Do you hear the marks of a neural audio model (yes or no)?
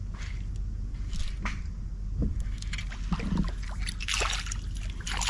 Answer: no